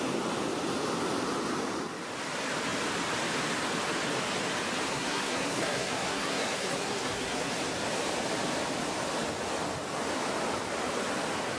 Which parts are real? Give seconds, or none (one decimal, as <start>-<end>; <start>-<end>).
0.0-4.9; 7.5-11.6